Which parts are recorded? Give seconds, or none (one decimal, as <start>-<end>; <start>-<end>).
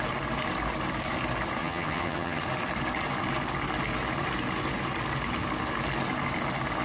0.0-1.6; 2.4-6.8